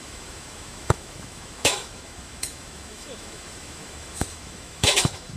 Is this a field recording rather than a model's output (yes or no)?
no